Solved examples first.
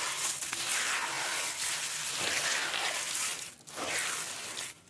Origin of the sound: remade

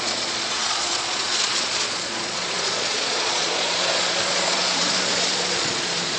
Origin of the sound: remade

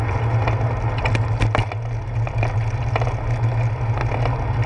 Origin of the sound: recorded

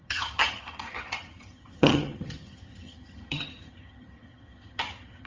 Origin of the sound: remade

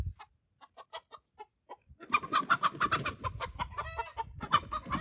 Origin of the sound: recorded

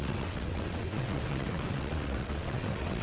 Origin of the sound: remade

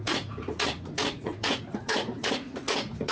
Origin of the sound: remade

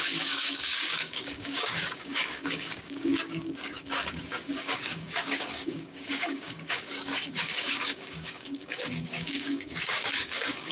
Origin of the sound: remade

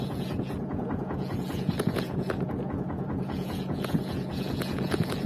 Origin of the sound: remade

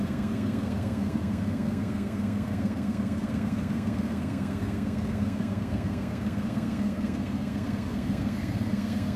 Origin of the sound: remade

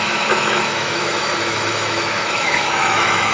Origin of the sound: remade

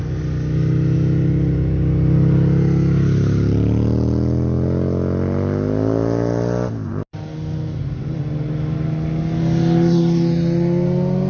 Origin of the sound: recorded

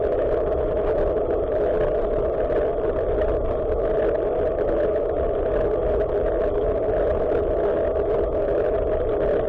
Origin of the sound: recorded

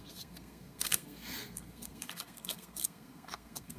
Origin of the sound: remade